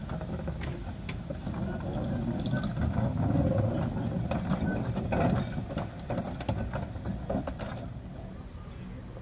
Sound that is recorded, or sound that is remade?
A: recorded